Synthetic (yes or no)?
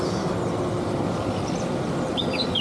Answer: yes